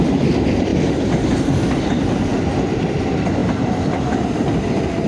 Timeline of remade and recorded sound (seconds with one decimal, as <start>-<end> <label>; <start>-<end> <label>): 0.0-5.1 recorded